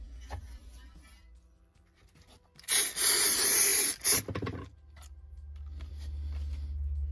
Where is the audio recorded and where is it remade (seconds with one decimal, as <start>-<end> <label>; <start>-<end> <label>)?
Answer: 0.0-7.1 recorded